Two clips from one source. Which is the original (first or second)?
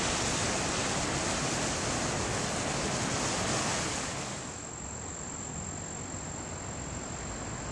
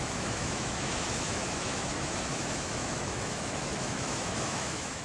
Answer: first